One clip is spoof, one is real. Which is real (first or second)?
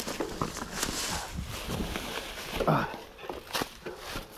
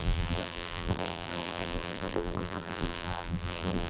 first